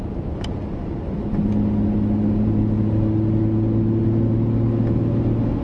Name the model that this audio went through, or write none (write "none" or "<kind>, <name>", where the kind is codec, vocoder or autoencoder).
none